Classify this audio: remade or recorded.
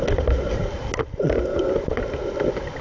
recorded